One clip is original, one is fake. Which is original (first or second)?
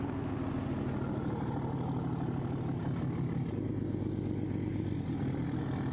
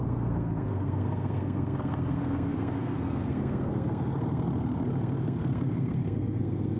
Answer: first